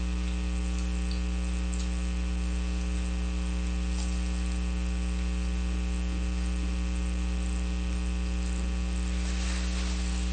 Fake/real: real